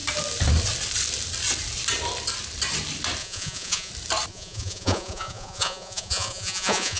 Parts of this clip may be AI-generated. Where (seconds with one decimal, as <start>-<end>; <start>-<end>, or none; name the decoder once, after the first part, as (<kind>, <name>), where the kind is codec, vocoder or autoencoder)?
3.2-3.9 (vocoder, Vocos); 4.3-7.0